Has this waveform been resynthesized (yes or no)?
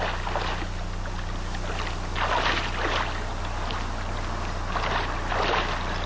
no